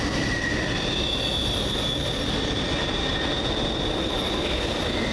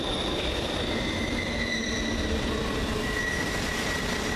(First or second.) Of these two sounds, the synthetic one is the second